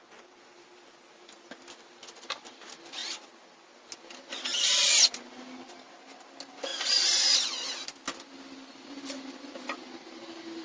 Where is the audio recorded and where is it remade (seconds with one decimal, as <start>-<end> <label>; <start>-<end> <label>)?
0.0-10.6 recorded